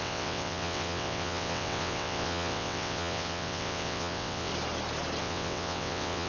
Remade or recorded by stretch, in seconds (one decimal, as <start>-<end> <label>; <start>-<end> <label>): 0.0-4.5 remade; 4.5-5.2 recorded; 5.2-6.3 remade